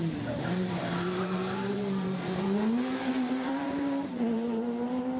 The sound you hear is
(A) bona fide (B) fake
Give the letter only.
B